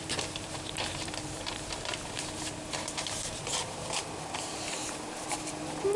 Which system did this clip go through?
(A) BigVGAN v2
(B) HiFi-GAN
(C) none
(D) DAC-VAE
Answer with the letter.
A